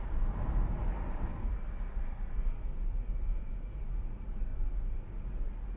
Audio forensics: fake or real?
real